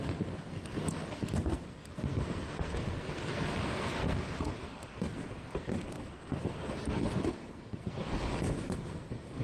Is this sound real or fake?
fake